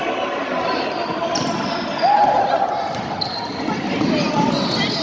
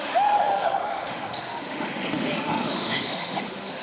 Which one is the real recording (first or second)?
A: first